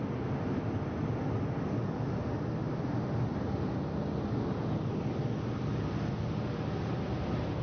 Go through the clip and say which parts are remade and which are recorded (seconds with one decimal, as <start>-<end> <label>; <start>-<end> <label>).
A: 0.0-7.6 recorded